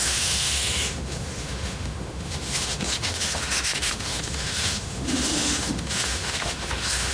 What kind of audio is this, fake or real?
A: fake